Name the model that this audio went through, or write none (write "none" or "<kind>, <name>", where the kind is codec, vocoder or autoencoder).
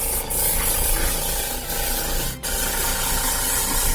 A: none